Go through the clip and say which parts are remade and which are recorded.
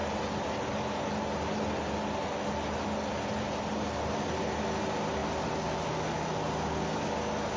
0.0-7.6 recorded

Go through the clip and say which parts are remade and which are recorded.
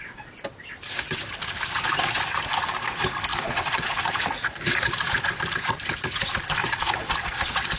0.0-3.3 recorded; 3.3-5.7 remade; 5.7-6.6 recorded; 6.6-7.8 remade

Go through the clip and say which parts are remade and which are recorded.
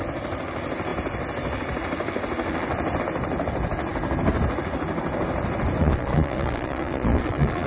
0.0-5.8 recorded; 5.8-7.7 remade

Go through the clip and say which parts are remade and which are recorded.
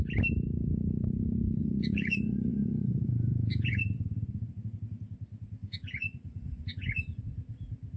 0.0-1.6 recorded; 1.6-3.8 remade; 3.8-5.6 recorded; 5.6-7.2 remade; 7.2-8.0 recorded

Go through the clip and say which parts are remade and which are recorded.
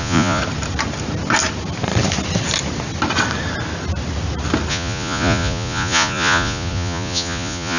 0.0-0.4 remade; 0.4-4.7 recorded; 4.7-7.8 remade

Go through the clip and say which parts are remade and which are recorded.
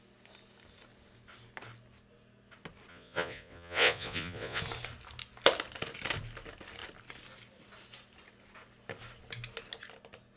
0.0-2.9 recorded; 2.9-4.6 remade; 4.6-10.4 recorded